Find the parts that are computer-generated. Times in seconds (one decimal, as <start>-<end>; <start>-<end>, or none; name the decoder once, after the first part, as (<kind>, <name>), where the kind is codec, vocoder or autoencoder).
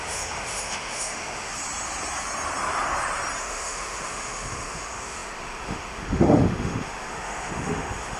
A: 0.0-1.5 (autoencoder, DAC-VAE); 3.4-8.2